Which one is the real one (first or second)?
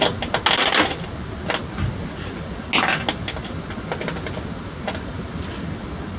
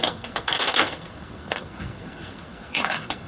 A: first